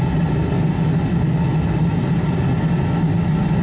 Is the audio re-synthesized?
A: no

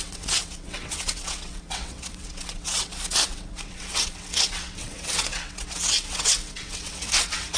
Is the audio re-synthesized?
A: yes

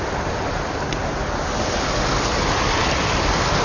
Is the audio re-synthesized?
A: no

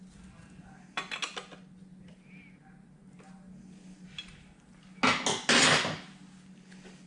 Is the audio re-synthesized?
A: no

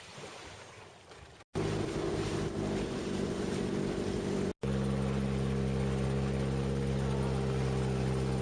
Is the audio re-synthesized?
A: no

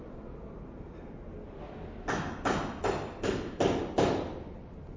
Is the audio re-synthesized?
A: no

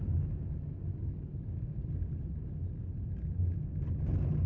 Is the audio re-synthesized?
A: no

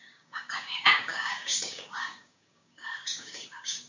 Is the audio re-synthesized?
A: yes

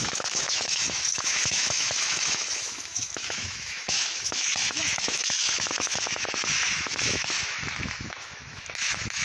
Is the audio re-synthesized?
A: yes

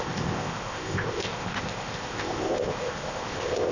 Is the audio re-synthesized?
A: yes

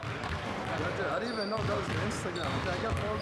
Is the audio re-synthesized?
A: no